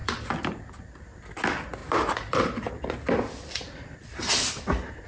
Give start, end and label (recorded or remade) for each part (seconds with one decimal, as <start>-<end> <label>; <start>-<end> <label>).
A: 0.0-1.2 remade; 1.2-1.8 recorded; 1.8-4.2 remade; 4.2-5.1 recorded